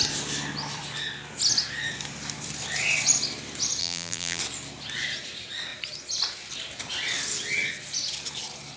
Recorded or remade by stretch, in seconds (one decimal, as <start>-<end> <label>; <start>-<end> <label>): 0.0-3.8 recorded; 3.8-4.4 remade; 4.4-8.8 recorded